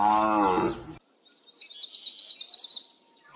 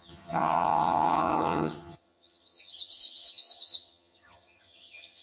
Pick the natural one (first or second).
first